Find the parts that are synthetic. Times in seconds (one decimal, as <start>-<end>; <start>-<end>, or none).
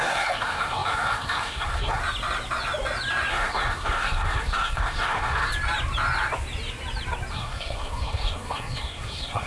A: 0.0-2.0; 3.3-5.5; 7.3-9.5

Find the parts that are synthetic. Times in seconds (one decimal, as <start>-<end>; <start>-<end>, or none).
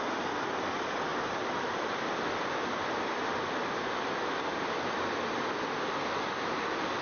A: none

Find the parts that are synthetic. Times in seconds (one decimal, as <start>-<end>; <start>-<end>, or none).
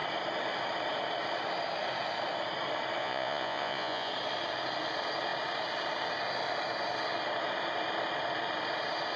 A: 3.0-4.1